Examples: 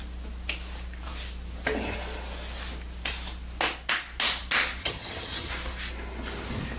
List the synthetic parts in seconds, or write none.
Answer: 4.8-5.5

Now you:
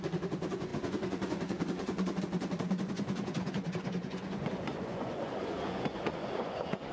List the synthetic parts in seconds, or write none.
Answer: 0.0-6.9

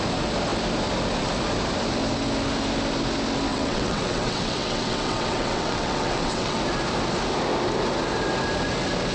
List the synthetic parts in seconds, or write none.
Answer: 3.5-6.6

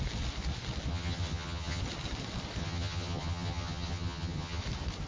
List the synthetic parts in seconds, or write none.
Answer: 0.9-1.8; 2.6-4.6

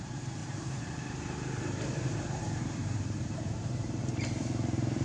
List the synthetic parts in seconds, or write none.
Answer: 0.0-5.0

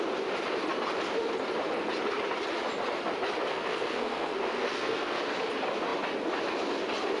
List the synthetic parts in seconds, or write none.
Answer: 3.5-5.2

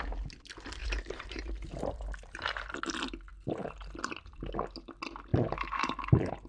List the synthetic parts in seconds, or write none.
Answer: 0.8-2.7; 3.3-4.4; 5.3-6.5

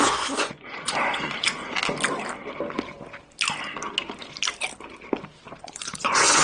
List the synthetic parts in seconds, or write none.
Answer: 0.0-1.8; 5.6-6.4